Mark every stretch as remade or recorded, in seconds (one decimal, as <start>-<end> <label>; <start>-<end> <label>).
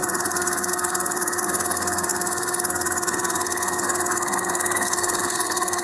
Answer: 0.0-5.8 remade